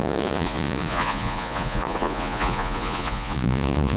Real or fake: fake